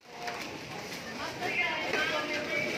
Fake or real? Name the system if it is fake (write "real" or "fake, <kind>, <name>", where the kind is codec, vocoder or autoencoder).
real